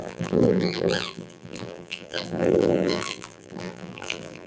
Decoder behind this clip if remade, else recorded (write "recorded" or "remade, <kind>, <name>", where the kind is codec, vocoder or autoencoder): remade, vocoder, BigVGAN v2